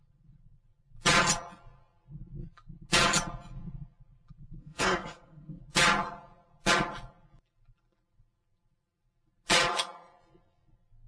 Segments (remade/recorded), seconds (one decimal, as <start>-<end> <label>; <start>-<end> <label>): 0.0-4.6 recorded; 4.6-5.6 remade; 5.6-11.1 recorded